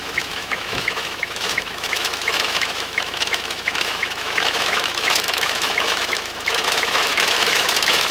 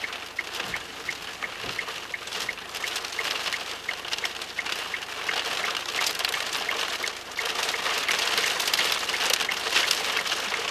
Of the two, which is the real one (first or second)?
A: second